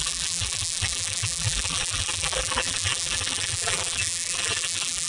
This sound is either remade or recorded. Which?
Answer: remade